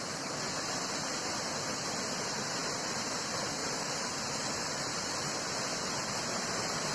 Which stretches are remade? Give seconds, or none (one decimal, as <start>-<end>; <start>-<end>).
3.6-4.7